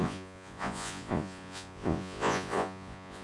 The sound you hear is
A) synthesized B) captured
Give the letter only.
A